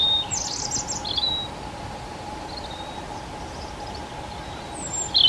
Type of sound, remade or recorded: recorded